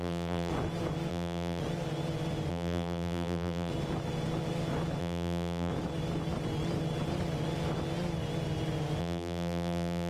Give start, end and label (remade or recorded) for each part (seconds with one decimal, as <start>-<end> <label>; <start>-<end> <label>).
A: 0.0-0.5 remade; 0.5-1.1 recorded; 1.1-1.6 remade; 1.6-2.5 recorded; 2.5-3.7 remade; 3.7-5.0 recorded; 5.0-5.7 remade; 5.7-9.0 recorded; 9.0-10.1 remade